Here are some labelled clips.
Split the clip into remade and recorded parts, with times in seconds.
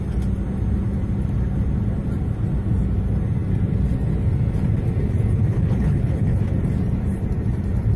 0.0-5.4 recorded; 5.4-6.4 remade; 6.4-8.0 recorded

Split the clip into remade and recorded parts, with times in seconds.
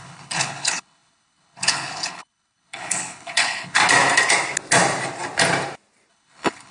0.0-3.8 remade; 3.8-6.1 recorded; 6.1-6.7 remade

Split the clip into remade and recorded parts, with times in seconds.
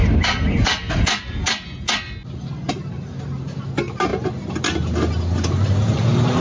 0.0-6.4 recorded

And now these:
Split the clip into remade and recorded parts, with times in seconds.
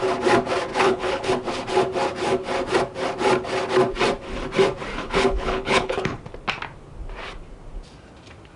0.0-0.7 recorded; 0.7-1.3 remade; 1.3-4.9 recorded; 4.9-6.2 remade; 6.2-8.6 recorded